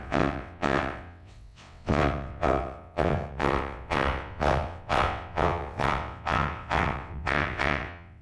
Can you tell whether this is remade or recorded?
remade